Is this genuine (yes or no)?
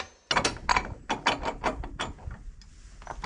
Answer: yes